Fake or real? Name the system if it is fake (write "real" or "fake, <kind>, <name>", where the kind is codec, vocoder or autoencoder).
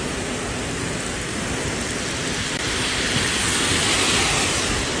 real